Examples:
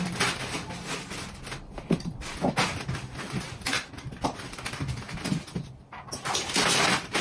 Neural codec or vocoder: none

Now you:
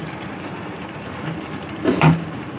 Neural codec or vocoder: vocoder, BigVGAN v2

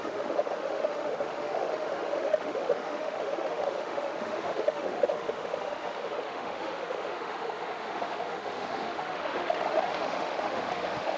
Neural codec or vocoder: autoencoder, DAC-VAE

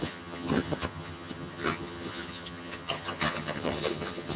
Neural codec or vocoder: vocoder, HiFi-GAN